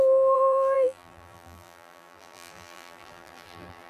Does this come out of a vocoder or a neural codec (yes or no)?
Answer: yes